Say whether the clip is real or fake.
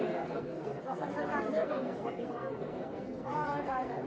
fake